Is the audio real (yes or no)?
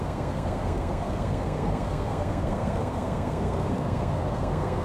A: no